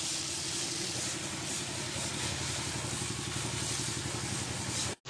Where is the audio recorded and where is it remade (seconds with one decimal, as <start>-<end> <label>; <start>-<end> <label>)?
0.0-5.1 recorded